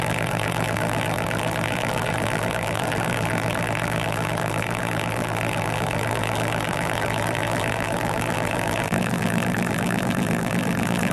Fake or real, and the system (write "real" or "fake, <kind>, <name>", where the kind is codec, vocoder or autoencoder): fake, vocoder, BigVGAN v2